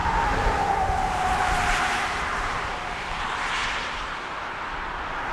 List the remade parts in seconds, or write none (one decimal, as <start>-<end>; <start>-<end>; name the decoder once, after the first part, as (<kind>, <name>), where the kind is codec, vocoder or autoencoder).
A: 0.0-3.2 (vocoder, BigVGAN v2); 3.6-4.6